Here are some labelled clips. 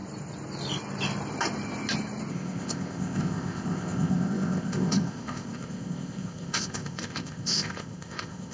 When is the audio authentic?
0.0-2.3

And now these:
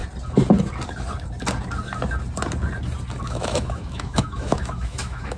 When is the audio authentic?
0.0-3.2

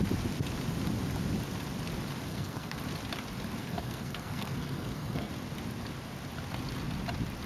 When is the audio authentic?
0.0-2.3; 2.8-3.6; 5.3-7.5

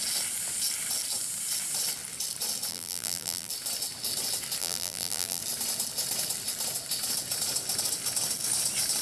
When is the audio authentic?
0.0-2.7; 3.5-4.6; 5.4-9.0